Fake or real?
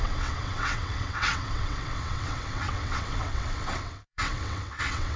fake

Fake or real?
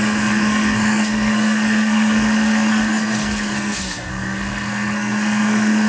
fake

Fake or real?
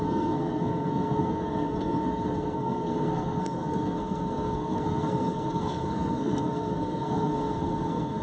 fake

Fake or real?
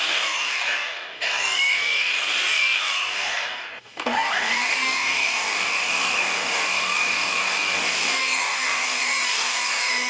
fake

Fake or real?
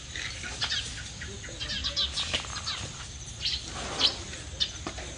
real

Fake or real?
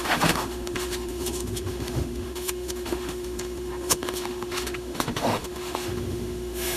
fake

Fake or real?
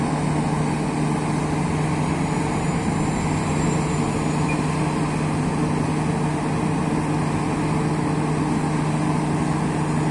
real